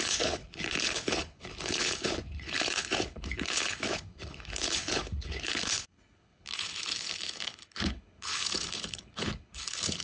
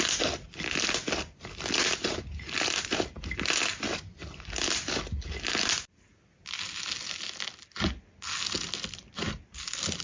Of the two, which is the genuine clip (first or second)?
second